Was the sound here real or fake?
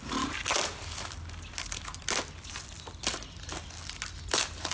real